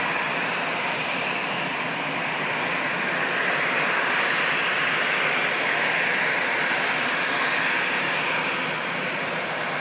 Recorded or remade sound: recorded